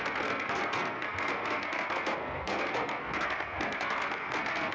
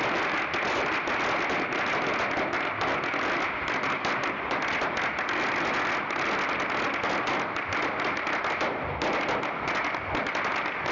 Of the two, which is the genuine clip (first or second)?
second